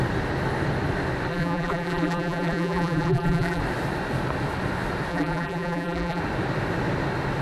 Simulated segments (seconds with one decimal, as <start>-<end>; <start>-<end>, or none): 1.3-3.6; 5.1-6.2